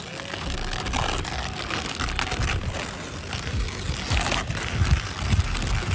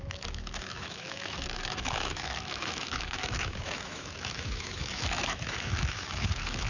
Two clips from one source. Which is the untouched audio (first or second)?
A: first